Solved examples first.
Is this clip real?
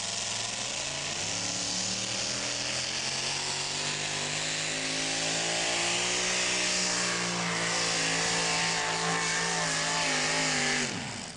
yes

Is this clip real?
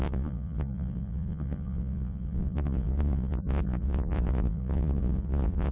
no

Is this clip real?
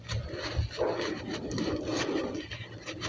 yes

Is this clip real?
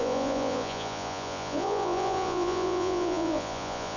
no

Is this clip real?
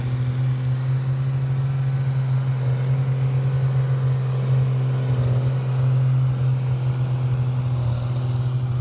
yes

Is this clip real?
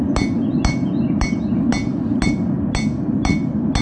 yes